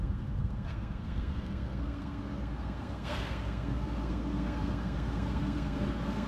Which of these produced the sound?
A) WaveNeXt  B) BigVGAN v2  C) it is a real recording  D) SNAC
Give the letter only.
D